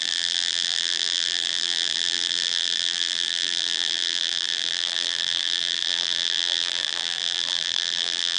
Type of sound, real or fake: fake